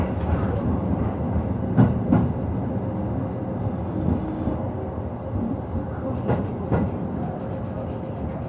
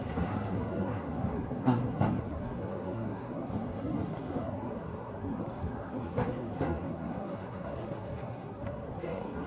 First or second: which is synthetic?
second